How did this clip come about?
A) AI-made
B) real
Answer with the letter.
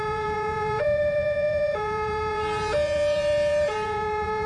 A